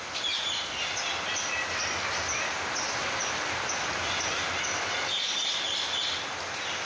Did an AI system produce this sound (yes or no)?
no